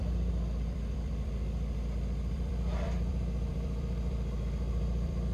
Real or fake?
fake